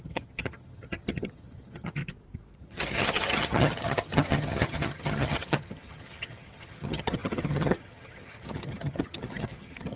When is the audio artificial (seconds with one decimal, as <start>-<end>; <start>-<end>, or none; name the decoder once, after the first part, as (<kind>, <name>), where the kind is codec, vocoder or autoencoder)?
0.0-2.0 (vocoder, HiFi-GAN); 2.6-10.0